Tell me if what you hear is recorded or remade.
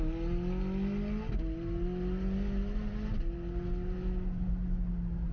recorded